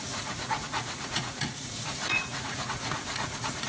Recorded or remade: remade